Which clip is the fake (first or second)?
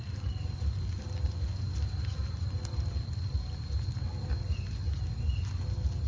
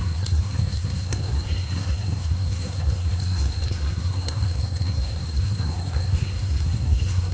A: second